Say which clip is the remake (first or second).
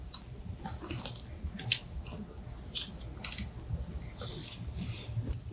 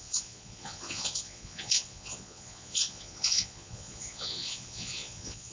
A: second